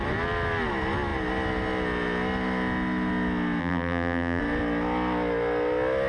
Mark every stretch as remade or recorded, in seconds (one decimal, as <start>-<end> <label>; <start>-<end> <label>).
0.0-3.6 recorded; 3.6-4.4 remade; 4.4-6.1 recorded

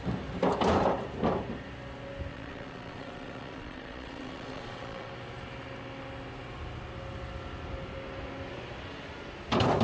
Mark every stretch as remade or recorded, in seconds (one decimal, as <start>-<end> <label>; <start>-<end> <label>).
0.0-2.3 recorded; 2.3-5.1 remade; 5.1-9.8 recorded

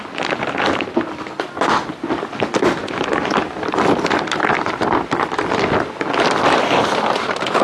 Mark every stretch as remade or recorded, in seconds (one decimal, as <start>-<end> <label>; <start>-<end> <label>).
0.0-7.6 recorded